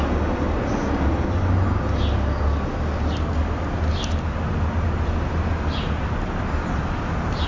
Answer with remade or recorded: recorded